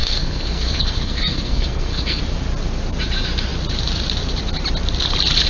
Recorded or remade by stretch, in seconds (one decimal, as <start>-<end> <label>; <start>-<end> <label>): 0.0-2.2 remade; 2.2-5.5 recorded